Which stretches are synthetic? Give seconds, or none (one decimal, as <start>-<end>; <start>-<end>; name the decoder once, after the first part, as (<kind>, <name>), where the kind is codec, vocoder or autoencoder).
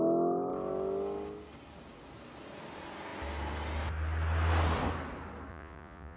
5.5-6.2 (vocoder, Vocos)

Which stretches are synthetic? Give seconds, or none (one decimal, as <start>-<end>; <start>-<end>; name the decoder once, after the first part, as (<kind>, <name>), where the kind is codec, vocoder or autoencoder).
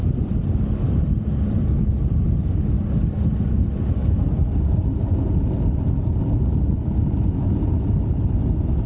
none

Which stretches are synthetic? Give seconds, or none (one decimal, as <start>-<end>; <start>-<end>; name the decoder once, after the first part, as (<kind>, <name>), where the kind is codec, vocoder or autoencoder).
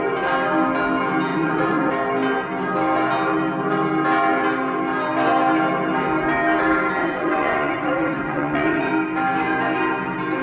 1.3-1.9 (vocoder, Vocos); 7.0-8.9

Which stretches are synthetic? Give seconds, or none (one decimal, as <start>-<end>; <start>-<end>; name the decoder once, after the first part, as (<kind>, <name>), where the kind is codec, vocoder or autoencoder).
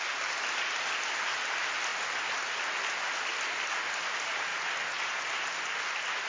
none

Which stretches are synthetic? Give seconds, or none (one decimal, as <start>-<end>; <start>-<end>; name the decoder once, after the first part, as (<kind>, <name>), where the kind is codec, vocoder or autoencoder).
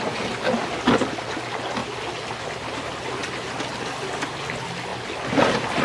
none